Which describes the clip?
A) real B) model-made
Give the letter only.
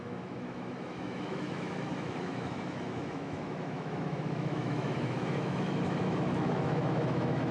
B